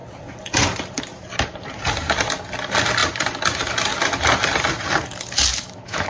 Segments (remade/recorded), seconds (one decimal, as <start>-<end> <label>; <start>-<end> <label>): 0.0-5.5 recorded; 5.5-6.1 remade

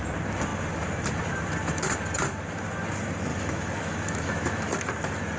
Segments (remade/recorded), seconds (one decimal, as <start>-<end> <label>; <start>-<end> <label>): 0.0-3.3 recorded; 3.3-4.9 remade; 4.9-5.4 recorded

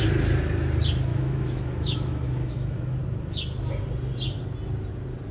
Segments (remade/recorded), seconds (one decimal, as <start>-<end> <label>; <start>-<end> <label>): 0.0-1.1 recorded; 1.1-3.0 remade; 3.0-5.3 recorded

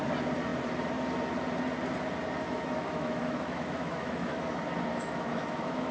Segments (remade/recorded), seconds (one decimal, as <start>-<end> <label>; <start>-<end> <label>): 0.0-2.4 recorded; 2.4-4.5 remade; 4.5-4.9 recorded; 4.9-5.9 remade

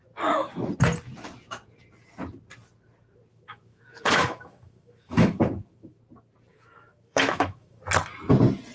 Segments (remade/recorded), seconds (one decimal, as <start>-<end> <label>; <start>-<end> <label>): 0.0-3.3 recorded; 3.3-6.0 remade; 6.0-6.5 recorded; 6.5-7.8 remade; 7.8-8.7 recorded

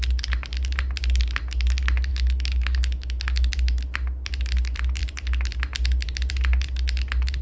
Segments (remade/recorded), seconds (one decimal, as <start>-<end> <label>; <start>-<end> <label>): 0.0-2.1 recorded; 2.1-3.5 remade; 3.5-7.4 recorded

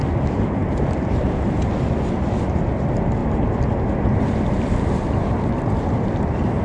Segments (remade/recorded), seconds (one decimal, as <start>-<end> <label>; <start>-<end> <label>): 0.0-6.6 recorded

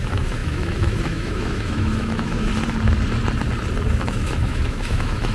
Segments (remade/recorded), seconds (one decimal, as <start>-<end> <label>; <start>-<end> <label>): 0.0-2.5 remade; 2.5-3.9 recorded; 3.9-5.3 remade